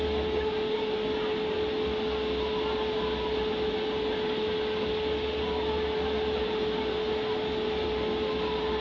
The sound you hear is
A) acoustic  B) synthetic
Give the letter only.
A